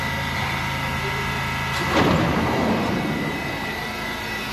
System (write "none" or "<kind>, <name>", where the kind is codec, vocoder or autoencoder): none